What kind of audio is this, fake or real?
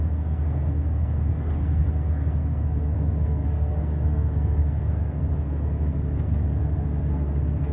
fake